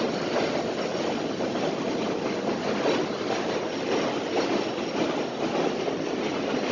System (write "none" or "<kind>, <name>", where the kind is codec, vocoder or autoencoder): none